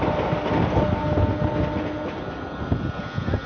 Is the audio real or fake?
real